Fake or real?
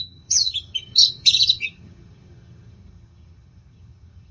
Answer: fake